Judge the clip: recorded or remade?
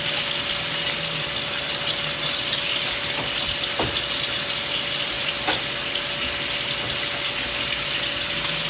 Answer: recorded